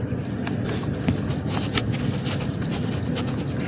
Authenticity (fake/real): real